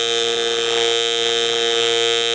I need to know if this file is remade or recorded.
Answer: recorded